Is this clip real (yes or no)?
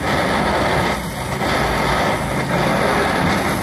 yes